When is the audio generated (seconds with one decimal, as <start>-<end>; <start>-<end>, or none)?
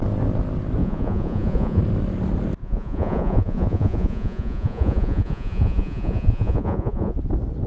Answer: 0.8-1.8; 2.6-7.2